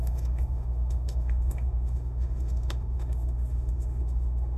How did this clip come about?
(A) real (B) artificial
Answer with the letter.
B